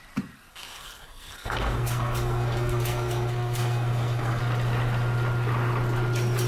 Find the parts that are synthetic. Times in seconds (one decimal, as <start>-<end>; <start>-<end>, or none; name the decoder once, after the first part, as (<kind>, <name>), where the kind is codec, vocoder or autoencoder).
0.5-4.4 (codec, SNAC)